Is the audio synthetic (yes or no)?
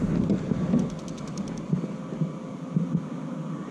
no